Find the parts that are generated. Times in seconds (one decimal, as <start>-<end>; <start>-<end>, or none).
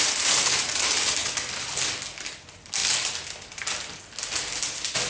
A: none